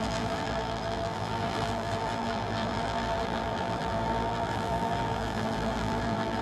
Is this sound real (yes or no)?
no